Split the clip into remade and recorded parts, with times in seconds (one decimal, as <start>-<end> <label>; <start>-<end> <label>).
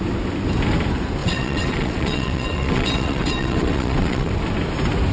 0.0-1.2 recorded; 1.2-4.3 remade; 4.3-5.1 recorded